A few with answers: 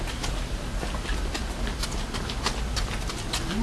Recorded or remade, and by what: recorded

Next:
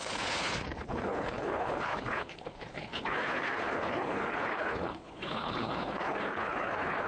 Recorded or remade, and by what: remade, codec, HILCodec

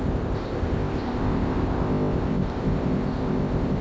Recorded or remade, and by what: remade, codec, ZipCodec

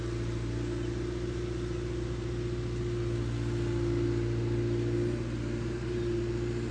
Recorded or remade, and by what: recorded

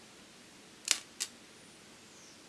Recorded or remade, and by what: recorded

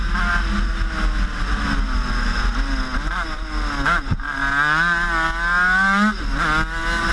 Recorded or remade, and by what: recorded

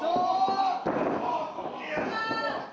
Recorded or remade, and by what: recorded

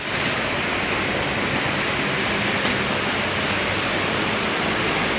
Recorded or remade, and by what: recorded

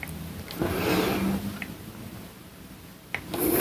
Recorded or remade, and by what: recorded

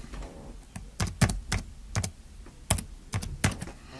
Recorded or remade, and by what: recorded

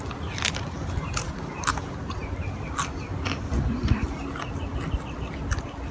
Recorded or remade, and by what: recorded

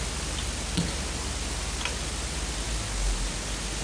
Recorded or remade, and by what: recorded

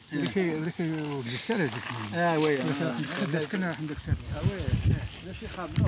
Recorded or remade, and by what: recorded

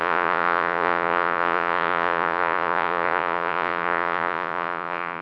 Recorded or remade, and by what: remade, vocoder, Vocos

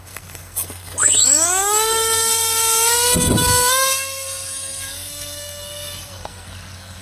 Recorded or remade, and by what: remade, codec, SNAC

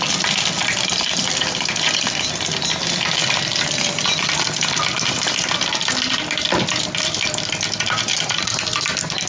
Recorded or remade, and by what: recorded